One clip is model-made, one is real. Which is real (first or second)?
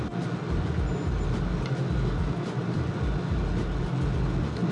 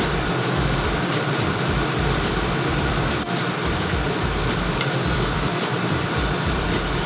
first